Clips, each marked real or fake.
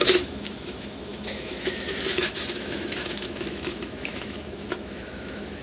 fake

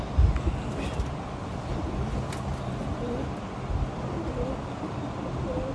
real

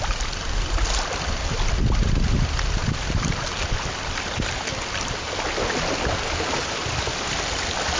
real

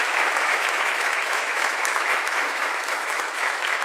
fake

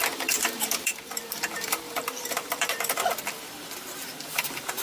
fake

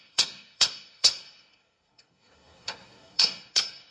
fake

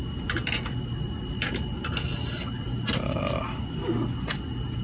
real